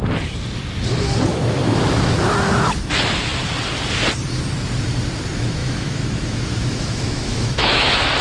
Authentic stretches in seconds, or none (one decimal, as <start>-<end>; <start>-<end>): 0.0-1.3; 2.2-5.6